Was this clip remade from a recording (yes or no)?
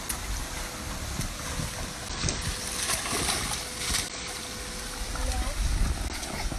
no